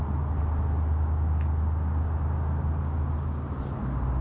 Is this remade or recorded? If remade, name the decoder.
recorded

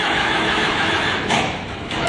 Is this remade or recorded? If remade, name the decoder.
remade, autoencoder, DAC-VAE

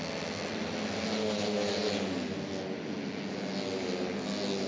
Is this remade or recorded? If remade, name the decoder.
recorded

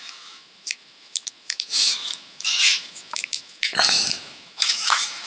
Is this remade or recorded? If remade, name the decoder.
remade, autoencoder, DAC-VAE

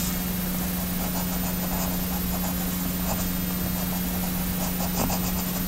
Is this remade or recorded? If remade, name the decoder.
recorded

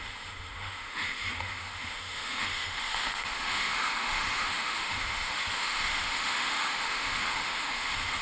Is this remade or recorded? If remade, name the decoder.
remade, autoencoder, DAC-VAE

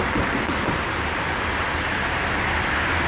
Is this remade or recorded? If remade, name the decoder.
recorded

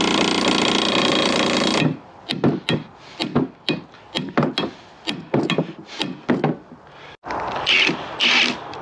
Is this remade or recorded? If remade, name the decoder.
recorded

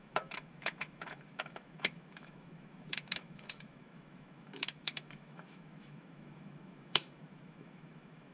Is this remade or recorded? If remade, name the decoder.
remade, autoencoder, DAC-VAE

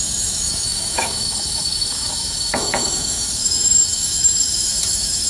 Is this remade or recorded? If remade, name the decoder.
remade, autoencoder, DAC-VAE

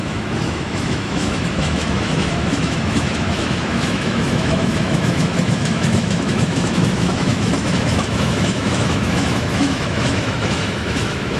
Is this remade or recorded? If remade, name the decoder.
remade, autoencoder, DAC-VAE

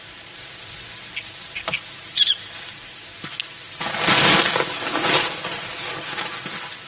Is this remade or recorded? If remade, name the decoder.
recorded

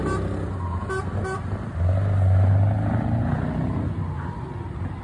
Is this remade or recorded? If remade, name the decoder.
recorded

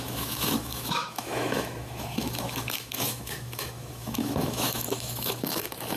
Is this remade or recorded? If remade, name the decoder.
remade, autoencoder, DAC-VAE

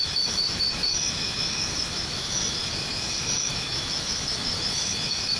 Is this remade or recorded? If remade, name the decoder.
remade, autoencoder, DAC-VAE